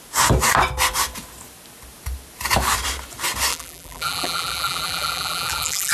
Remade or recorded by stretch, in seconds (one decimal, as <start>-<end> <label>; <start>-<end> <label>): 0.0-3.5 recorded; 3.5-5.9 remade